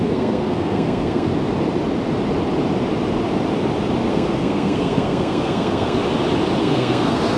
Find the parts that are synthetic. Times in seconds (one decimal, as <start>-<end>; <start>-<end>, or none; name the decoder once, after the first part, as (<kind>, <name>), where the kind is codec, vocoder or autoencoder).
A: 0.0-1.3 (codec, SNAC); 4.1-6.0; 6.6-7.4